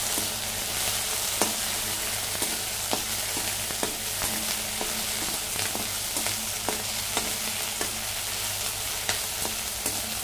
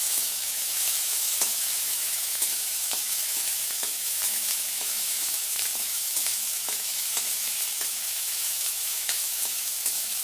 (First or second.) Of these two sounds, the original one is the first